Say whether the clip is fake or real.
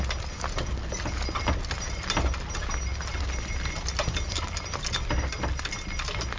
real